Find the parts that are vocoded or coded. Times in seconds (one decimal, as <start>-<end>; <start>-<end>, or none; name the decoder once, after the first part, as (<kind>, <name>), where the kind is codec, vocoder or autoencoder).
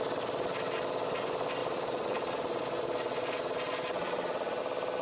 1.6-4.6 (vocoder, Vocos)